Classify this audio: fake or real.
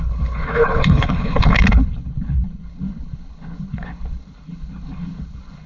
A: fake